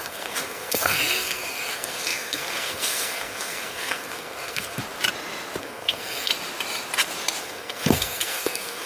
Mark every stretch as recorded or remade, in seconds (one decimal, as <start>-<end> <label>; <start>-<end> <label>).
0.0-4.8 remade; 4.8-5.6 recorded; 5.6-6.3 remade; 6.3-7.4 recorded; 7.4-8.9 remade